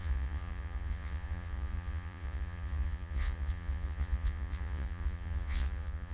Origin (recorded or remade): remade